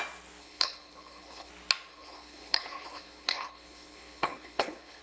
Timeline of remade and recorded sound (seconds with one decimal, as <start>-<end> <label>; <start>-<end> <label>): 0.0-0.4 recorded; 0.4-1.5 remade; 1.5-1.9 recorded; 1.9-5.0 remade